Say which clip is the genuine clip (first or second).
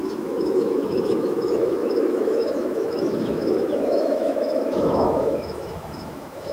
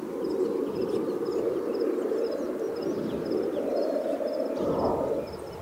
second